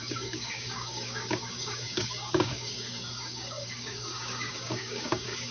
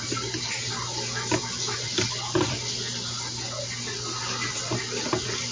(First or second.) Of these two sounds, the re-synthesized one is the first